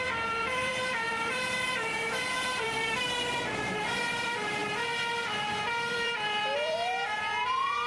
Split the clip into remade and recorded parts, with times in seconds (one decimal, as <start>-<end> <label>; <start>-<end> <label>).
0.0-4.6 remade; 4.6-5.9 recorded; 5.9-7.9 remade

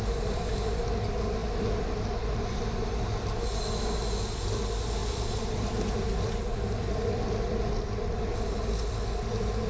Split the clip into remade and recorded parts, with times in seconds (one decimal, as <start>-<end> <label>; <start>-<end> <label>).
0.0-5.0 recorded; 5.0-8.3 remade; 8.3-9.7 recorded